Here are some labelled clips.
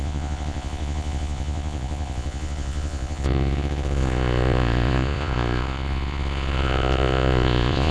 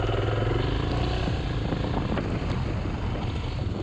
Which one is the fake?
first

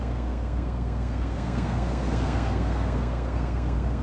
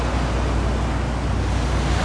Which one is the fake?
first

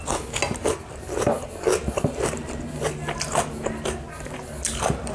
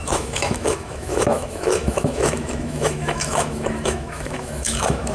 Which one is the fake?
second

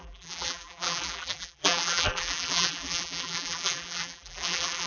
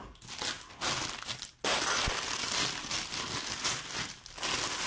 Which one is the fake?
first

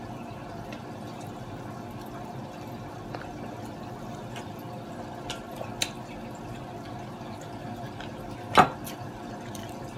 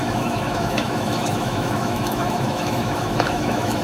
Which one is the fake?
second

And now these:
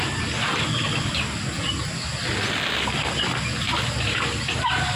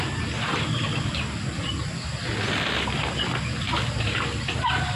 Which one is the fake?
second